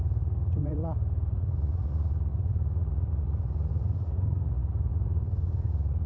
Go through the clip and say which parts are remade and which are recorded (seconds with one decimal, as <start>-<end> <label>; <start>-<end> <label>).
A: 0.0-0.8 remade; 0.8-1.3 recorded; 1.3-6.1 remade